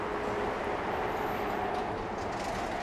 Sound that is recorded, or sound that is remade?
recorded